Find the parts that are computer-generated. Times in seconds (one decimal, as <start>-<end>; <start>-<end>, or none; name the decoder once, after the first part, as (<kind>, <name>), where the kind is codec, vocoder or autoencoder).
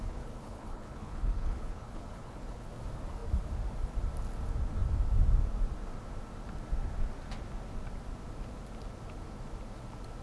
0.0-2.7 (codec, HILCodec)